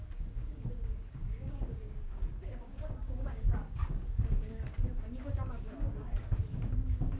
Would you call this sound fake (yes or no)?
yes